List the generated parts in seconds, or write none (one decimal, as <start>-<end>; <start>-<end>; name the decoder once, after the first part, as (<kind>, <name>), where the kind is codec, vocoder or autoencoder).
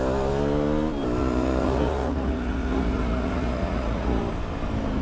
1.2-4.2 (vocoder, Vocos)